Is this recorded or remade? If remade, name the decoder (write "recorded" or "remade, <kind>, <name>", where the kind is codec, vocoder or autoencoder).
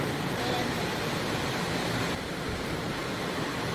remade, vocoder, BigVGAN v2